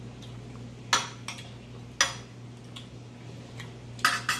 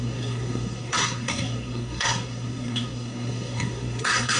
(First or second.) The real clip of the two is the first